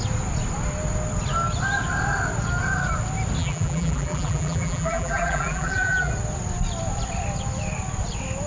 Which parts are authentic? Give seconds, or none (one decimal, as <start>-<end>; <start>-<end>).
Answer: 0.0-3.4; 6.1-8.5